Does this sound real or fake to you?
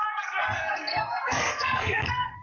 fake